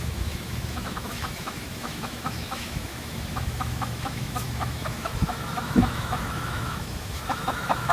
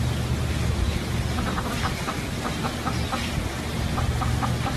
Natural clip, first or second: second